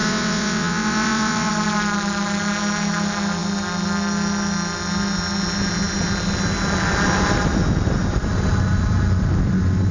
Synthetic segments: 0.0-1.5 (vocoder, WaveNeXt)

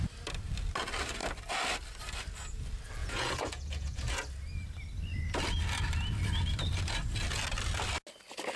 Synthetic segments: 3.0-4.1 (vocoder, Vocos)